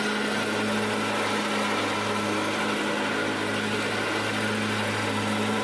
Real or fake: real